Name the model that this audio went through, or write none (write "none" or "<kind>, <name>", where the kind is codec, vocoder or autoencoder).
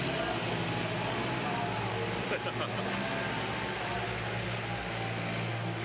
none